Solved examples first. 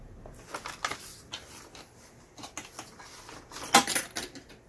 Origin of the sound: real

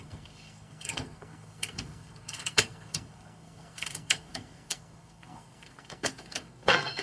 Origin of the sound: fake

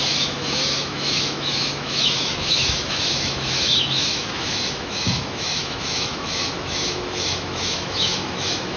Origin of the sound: fake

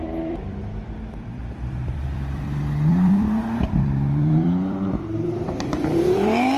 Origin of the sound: fake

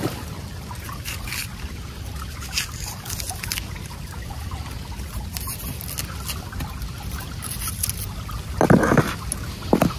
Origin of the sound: real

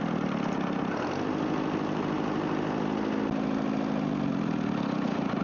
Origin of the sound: real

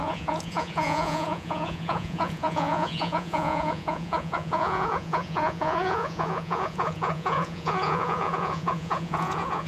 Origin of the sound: fake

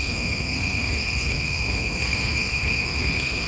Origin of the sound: fake